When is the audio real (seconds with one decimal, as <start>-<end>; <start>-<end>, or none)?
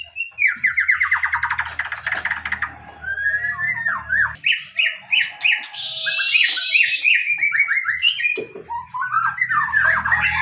0.0-10.4